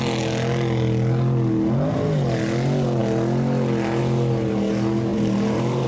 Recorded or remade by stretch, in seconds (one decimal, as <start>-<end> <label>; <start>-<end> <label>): 0.0-5.1 recorded; 5.1-5.9 remade